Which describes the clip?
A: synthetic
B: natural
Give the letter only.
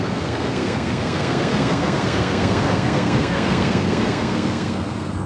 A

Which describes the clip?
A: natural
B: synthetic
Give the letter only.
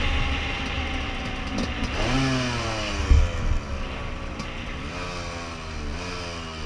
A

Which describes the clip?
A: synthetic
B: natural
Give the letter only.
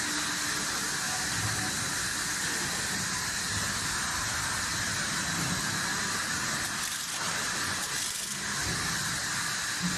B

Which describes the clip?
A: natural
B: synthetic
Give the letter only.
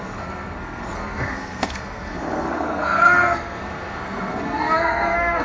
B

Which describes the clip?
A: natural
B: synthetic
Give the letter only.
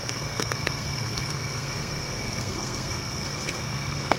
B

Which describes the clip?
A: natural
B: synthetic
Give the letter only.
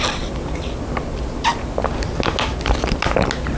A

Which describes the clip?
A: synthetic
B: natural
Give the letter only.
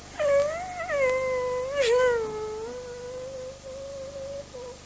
B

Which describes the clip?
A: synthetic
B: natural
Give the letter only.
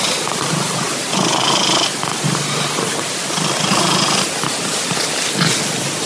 B